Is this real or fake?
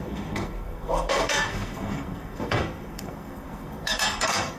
fake